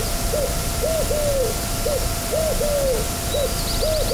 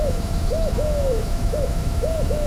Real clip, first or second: first